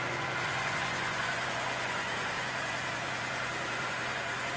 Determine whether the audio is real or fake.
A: fake